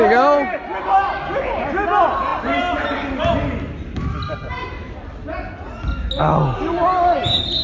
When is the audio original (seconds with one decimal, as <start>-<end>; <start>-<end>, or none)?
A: 0.0-7.6